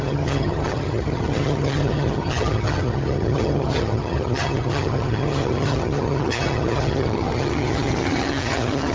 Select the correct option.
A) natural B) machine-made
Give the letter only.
B